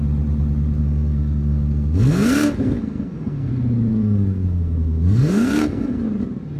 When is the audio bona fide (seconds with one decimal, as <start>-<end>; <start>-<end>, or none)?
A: 0.0-0.8; 3.5-3.9; 6.0-6.6